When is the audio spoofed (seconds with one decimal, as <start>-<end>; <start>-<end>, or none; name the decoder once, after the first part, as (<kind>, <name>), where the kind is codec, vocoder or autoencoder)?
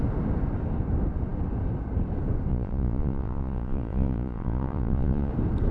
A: 2.5-5.3 (vocoder, Vocos)